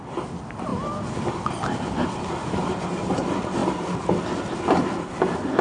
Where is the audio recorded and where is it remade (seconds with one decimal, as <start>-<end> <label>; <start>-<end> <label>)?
0.0-5.6 recorded